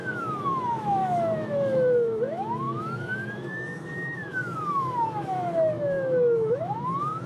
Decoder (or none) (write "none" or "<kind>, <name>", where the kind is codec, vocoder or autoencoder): autoencoder, DAC-VAE